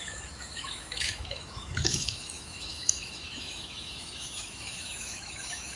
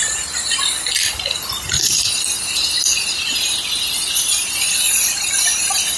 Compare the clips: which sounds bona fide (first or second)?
second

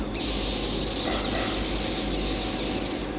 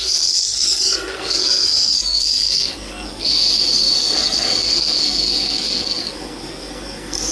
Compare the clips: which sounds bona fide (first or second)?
first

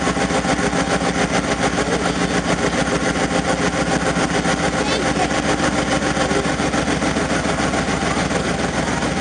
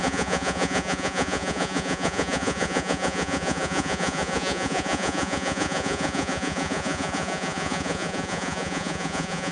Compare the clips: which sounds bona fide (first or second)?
first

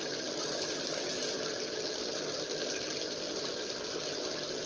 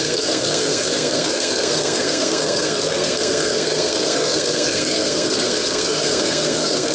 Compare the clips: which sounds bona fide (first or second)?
first